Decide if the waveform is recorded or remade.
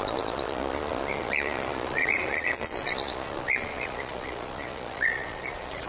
remade